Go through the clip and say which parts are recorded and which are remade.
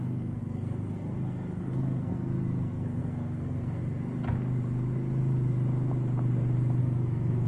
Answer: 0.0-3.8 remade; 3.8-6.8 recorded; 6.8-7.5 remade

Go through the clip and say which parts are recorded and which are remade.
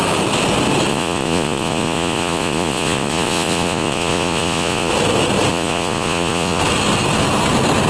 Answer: 0.0-0.9 recorded; 0.9-4.9 remade; 4.9-5.5 recorded; 5.5-6.6 remade; 6.6-7.9 recorded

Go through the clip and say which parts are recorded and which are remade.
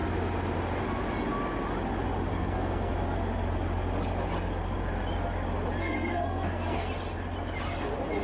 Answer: 0.0-2.3 recorded; 2.3-2.9 remade; 2.9-5.8 recorded; 5.8-6.9 remade; 6.9-8.2 recorded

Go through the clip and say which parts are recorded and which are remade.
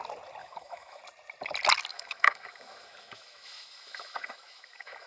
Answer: 0.0-0.4 recorded; 0.4-1.0 remade; 1.0-1.9 recorded; 1.9-5.1 remade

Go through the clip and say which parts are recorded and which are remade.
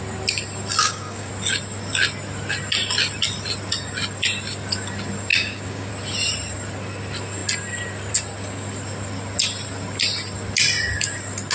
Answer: 0.0-0.8 recorded; 0.8-1.3 remade; 1.3-5.3 recorded; 5.3-5.9 remade; 5.9-11.5 recorded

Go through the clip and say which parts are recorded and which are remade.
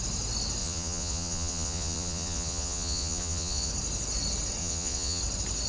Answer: 0.0-0.6 recorded; 0.6-3.7 remade; 3.7-4.6 recorded; 4.6-5.2 remade; 5.2-5.7 recorded